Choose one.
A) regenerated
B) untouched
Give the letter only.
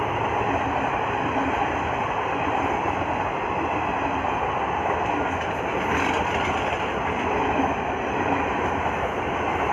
B